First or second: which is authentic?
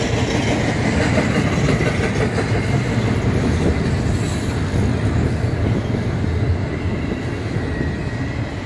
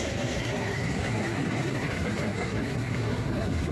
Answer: first